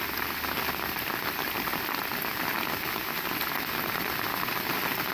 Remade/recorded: recorded